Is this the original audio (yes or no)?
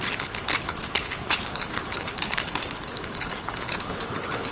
no